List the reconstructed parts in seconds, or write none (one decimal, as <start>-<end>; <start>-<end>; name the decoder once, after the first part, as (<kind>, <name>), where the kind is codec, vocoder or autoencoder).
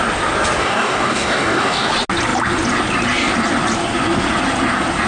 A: 0.6-1.9 (codec, DAC)